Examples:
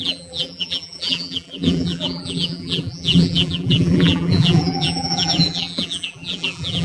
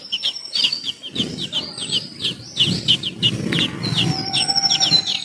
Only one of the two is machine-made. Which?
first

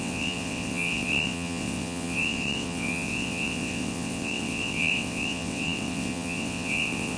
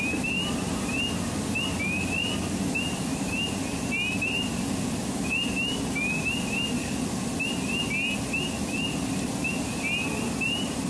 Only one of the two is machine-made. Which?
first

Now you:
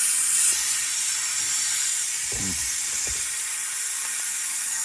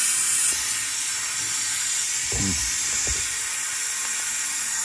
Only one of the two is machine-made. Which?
first